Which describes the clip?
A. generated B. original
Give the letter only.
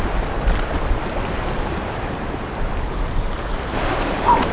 B